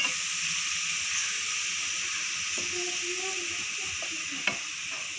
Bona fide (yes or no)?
yes